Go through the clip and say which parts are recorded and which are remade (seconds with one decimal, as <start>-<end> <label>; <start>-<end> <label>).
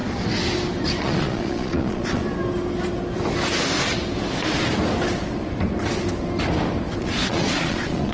0.0-1.0 recorded; 1.0-2.2 remade; 2.2-7.0 recorded; 7.0-8.1 remade